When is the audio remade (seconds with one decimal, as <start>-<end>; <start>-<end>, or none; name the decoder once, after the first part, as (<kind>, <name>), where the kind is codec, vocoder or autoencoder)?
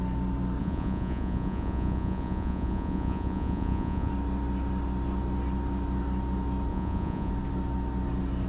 0.6-4.1 (vocoder, Vocos); 6.7-7.3